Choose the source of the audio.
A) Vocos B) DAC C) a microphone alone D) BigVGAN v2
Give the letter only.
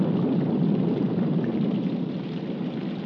C